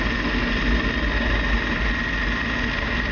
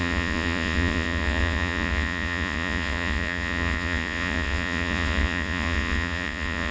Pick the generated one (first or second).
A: second